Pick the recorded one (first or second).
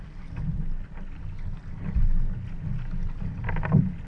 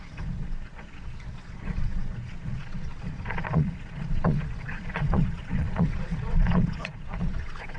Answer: first